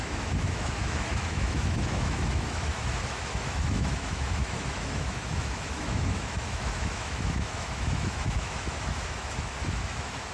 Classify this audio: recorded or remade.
remade